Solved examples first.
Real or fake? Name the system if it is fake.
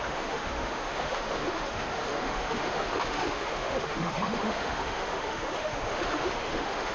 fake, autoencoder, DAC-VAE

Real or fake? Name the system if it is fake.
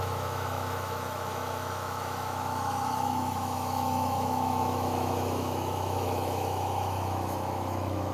fake, autoencoder, DAC-VAE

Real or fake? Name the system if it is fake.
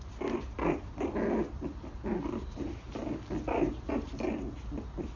real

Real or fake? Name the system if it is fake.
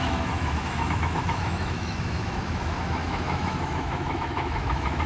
fake, autoencoder, DAC-VAE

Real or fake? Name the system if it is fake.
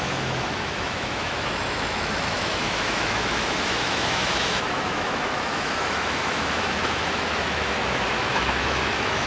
fake, autoencoder, DAC-VAE